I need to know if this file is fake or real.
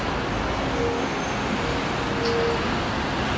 real